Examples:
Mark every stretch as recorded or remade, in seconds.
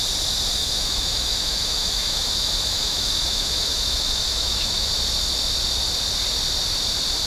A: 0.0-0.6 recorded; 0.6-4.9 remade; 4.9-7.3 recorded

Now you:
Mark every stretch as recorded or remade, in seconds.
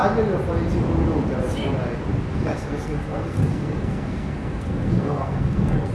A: 0.0-2.3 recorded; 2.3-5.9 remade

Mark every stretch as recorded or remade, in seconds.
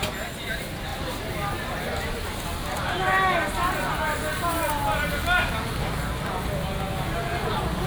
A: 0.0-7.9 recorded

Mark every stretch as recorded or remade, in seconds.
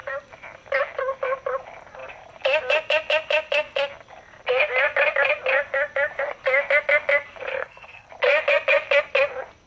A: 0.0-7.5 recorded; 7.5-8.1 remade; 8.1-9.7 recorded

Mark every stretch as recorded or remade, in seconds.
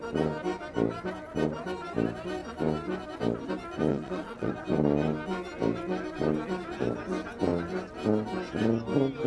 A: 0.0-3.9 recorded; 3.9-4.5 remade; 4.5-9.3 recorded